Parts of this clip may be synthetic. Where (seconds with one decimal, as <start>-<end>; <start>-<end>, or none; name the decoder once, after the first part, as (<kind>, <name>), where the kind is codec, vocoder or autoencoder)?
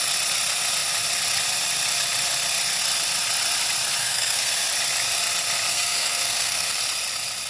4.0-4.7 (codec, SNAC); 5.7-6.8